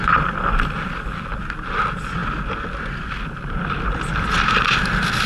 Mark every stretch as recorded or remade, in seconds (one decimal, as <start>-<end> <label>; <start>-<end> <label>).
0.0-5.3 recorded